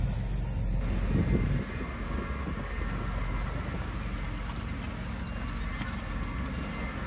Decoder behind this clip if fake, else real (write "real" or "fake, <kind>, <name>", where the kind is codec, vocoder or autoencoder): real